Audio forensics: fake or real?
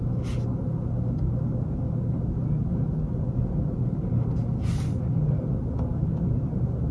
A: real